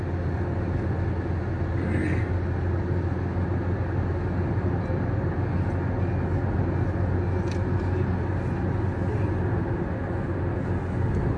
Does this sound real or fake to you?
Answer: real